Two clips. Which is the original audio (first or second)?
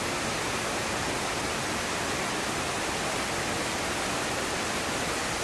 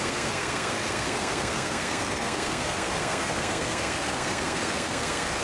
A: first